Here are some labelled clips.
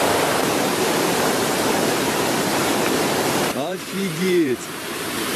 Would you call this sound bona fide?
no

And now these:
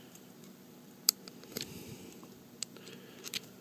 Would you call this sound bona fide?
no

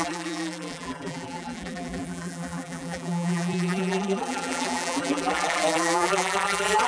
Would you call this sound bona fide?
no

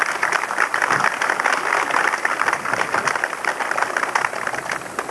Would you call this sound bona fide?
yes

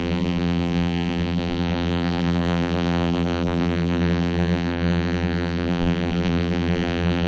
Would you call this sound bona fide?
no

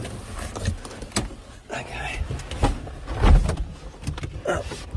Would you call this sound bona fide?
yes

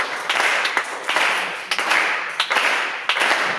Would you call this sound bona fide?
no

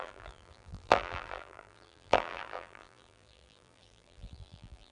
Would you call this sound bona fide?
no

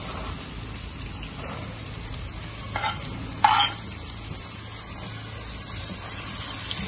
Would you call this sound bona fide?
yes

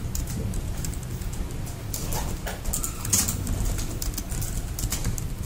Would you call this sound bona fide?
yes